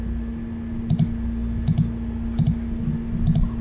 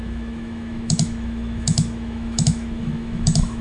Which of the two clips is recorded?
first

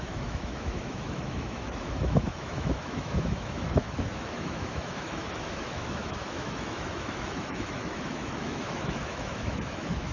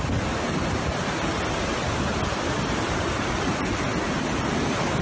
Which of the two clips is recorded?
second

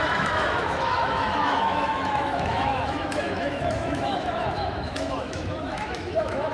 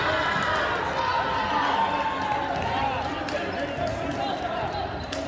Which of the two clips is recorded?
second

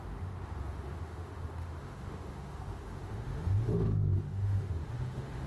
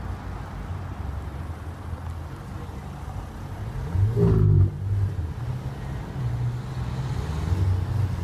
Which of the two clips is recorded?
second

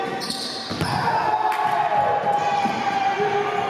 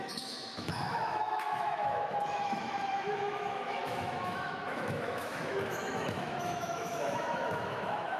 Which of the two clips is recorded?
first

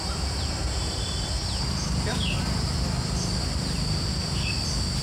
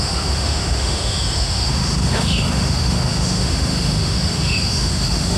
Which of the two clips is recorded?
first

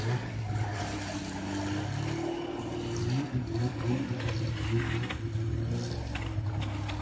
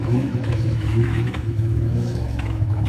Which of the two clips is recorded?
first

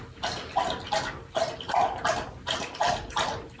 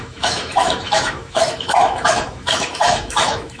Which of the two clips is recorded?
first